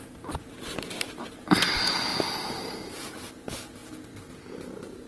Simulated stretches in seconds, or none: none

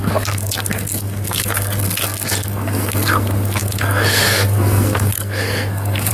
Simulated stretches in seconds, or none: 0.0-6.1 (codec, SNAC)

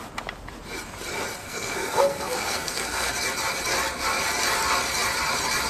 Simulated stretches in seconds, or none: 1.4-3.1 (codec, SNAC)